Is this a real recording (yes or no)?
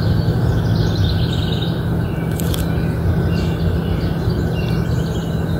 yes